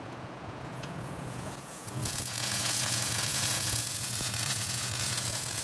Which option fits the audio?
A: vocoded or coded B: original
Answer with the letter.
A